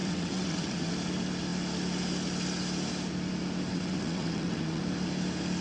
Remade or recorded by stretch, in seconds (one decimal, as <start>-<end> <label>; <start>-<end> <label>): 0.0-0.9 remade; 0.9-3.7 recorded; 3.7-4.8 remade; 4.8-5.6 recorded